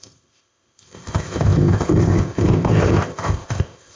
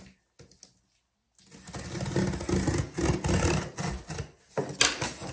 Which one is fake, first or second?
first